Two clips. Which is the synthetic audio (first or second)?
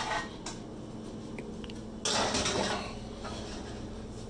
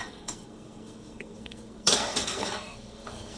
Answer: second